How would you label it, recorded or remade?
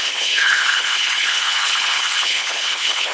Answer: remade